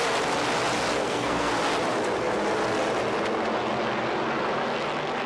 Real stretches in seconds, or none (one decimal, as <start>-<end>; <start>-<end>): 0.0-0.9; 1.5-5.3